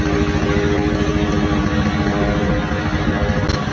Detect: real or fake real